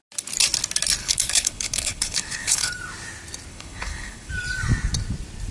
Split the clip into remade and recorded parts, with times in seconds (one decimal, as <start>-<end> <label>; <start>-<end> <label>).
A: 0.0-1.0 recorded; 1.0-2.7 remade; 2.7-3.5 recorded; 3.5-4.3 remade; 4.3-5.5 recorded